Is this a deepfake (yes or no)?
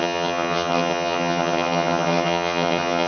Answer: yes